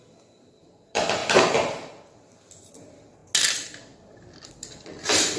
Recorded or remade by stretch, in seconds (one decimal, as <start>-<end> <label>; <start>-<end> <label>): 0.0-1.2 remade; 1.2-2.1 recorded; 2.1-3.2 remade; 3.2-4.5 recorded; 4.5-5.4 remade